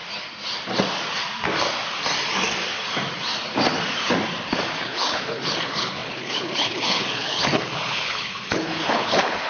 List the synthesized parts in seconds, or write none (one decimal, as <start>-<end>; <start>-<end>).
4.7-9.5